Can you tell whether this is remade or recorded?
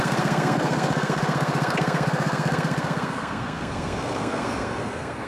remade